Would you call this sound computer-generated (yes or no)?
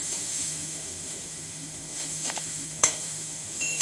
yes